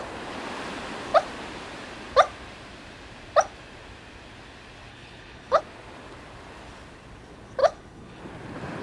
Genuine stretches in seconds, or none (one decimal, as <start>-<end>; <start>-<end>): 0.0-4.9; 5.6-7.6; 8.2-8.8